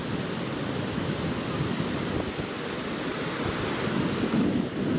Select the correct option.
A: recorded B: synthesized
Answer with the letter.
A